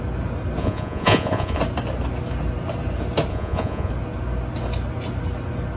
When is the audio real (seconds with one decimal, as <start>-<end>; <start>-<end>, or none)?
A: 0.0-0.6; 1.6-3.3; 3.9-5.8

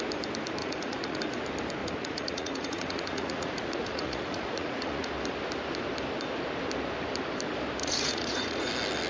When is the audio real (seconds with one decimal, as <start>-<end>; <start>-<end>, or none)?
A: 0.0-0.6; 1.2-1.8; 5.1-7.8; 8.7-9.1

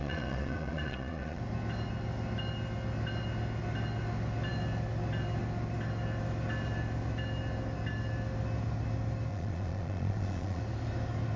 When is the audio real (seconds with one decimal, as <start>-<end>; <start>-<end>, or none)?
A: 1.4-9.3; 10.6-11.4

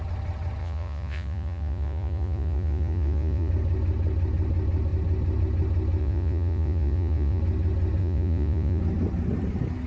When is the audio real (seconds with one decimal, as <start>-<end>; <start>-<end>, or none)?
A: 0.0-0.6; 3.5-6.0; 7.4-8.0; 8.8-9.9

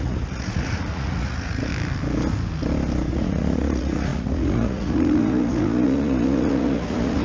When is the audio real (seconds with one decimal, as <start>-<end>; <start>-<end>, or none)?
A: 1.7-3.1

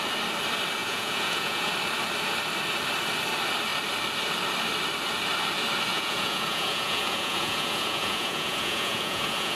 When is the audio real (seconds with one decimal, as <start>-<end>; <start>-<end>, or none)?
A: 0.0-0.8; 1.7-5.9